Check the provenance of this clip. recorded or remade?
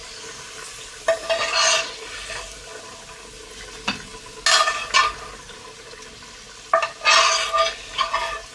recorded